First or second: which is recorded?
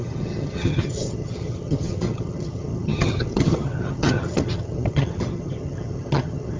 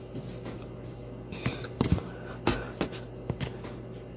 second